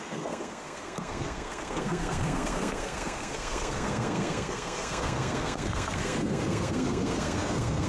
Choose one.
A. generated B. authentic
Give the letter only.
A